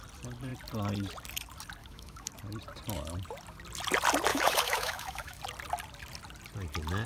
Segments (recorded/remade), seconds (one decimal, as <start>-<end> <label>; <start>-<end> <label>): 0.0-1.8 recorded; 1.8-2.3 remade; 2.3-4.3 recorded; 4.3-5.4 remade; 5.4-7.1 recorded